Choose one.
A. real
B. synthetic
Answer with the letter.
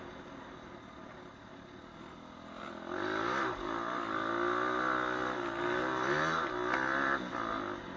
A